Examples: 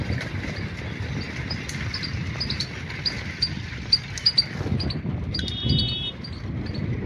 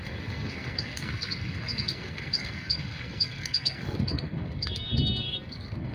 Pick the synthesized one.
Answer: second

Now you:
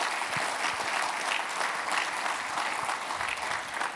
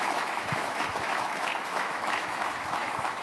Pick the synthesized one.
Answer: second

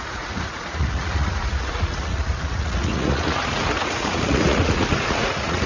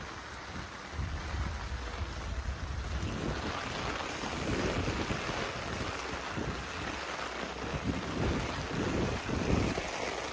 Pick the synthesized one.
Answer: first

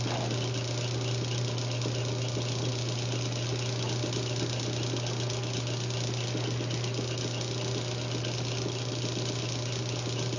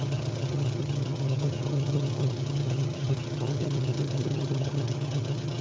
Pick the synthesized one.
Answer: second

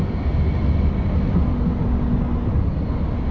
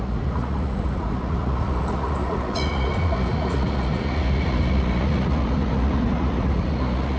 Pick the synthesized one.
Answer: second